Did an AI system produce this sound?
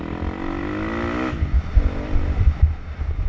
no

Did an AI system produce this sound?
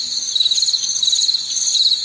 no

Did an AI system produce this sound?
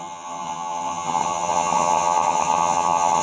yes